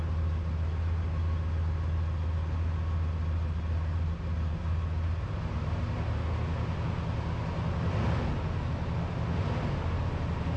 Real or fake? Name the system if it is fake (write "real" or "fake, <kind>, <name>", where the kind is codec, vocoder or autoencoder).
real